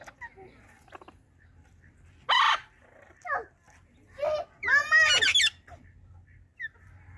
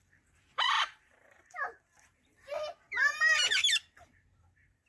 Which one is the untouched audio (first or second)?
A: first